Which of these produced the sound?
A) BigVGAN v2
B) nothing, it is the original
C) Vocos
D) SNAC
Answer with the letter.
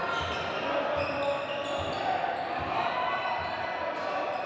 B